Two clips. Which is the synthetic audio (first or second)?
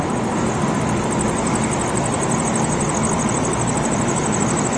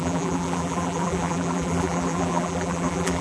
second